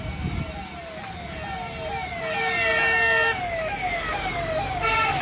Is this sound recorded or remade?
recorded